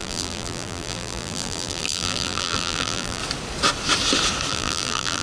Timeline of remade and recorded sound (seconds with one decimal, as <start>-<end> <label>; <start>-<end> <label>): 0.0-3.2 remade; 3.2-4.5 recorded; 4.5-5.2 remade